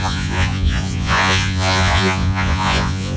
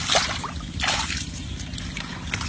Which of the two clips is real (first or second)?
second